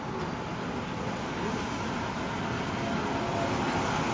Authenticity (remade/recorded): recorded